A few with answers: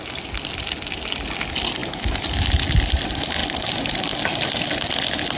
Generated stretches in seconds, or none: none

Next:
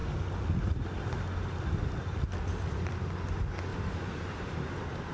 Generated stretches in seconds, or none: 3.7-5.1

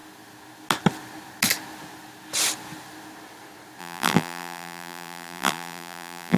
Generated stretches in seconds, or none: 3.8-6.4